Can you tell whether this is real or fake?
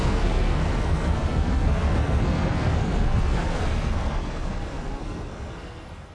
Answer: fake